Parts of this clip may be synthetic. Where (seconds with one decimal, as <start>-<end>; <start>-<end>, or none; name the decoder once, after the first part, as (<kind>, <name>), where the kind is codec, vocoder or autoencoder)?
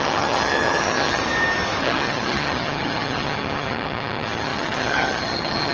0.0-1.2 (vocoder, HiFi-GAN); 1.8-5.7